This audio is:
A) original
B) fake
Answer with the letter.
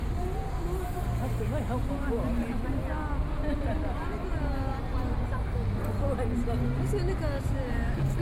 A